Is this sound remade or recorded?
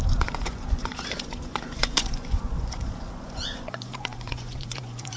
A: remade